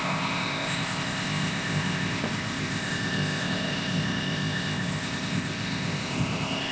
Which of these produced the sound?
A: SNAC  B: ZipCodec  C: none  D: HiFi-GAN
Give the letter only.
B